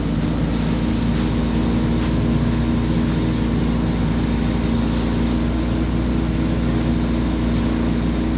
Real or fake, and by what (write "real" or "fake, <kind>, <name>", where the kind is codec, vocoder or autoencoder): real